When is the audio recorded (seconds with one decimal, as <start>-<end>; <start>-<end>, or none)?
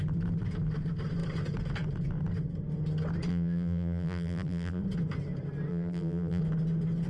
0.0-3.3; 4.8-5.7; 6.4-7.1